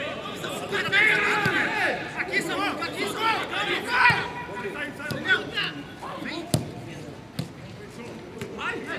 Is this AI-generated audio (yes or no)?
no